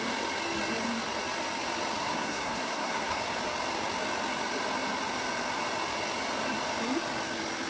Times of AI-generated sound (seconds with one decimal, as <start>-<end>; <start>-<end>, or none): 2.0-3.2